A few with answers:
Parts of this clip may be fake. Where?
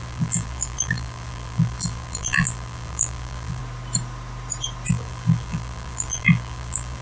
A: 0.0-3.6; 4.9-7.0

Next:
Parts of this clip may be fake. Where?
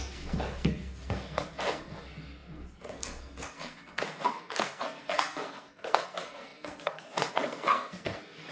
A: 0.0-8.5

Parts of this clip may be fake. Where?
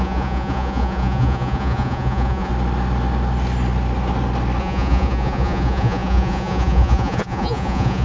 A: 0.0-2.5; 4.6-8.0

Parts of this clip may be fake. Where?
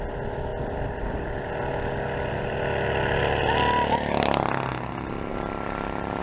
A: none